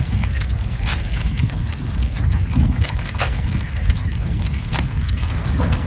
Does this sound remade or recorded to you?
remade